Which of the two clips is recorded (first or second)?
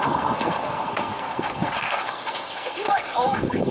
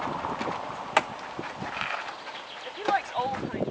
second